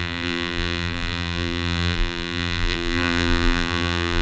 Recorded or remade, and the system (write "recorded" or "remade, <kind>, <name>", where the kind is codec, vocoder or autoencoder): remade, vocoder, BigVGAN v2